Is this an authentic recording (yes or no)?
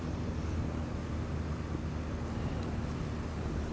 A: yes